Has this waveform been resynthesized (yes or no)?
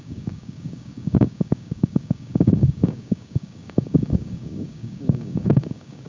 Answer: yes